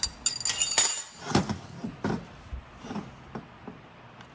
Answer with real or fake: real